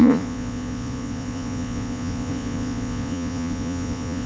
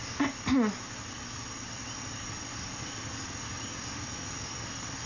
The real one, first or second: second